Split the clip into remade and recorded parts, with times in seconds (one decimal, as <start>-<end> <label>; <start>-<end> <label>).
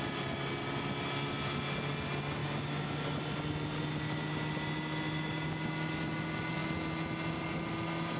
0.0-8.2 recorded